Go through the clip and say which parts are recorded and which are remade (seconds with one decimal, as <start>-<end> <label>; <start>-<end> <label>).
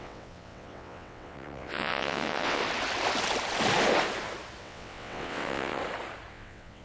0.0-2.6 remade; 2.6-4.6 recorded; 4.6-5.8 remade; 5.8-6.3 recorded; 6.3-6.8 remade